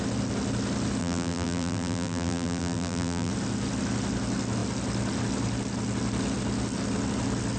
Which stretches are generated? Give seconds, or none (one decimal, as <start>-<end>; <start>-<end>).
1.0-3.3